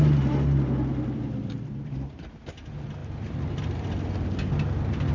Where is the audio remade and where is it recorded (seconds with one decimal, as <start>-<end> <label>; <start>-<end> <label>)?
0.0-0.9 recorded; 0.9-2.5 remade; 2.5-3.0 recorded; 3.0-3.9 remade; 3.9-5.1 recorded

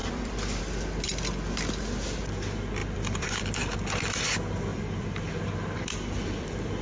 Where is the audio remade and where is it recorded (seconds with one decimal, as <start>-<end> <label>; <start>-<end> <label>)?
0.0-0.6 remade; 0.6-2.8 recorded; 2.8-3.3 remade; 3.3-4.7 recorded; 4.7-6.8 remade

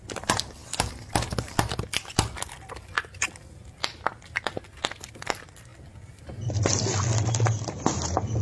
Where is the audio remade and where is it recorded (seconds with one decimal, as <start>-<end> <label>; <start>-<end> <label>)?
0.0-8.4 recorded

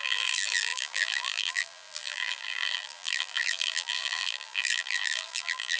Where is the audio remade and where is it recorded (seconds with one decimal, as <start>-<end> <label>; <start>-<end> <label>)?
0.0-5.8 remade

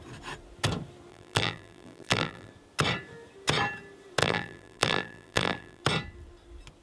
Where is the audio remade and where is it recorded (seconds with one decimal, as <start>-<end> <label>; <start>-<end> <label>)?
0.0-1.1 recorded; 1.1-2.5 remade; 2.5-4.2 recorded; 4.2-5.8 remade; 5.8-6.8 recorded